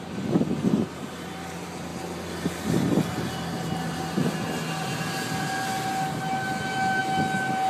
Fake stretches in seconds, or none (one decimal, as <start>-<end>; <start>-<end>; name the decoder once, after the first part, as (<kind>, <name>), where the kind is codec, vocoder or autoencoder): none